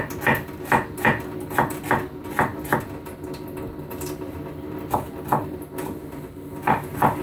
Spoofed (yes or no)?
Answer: no